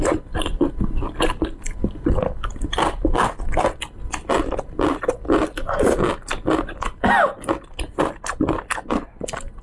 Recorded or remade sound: recorded